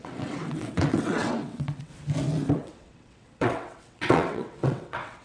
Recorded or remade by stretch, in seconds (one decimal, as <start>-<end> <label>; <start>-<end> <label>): 0.0-1.9 remade; 1.9-2.5 recorded; 2.5-5.2 remade